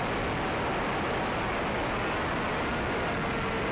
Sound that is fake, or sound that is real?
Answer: real